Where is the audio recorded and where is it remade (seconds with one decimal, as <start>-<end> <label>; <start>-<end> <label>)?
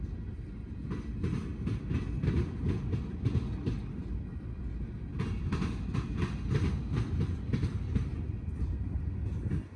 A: 0.0-9.8 recorded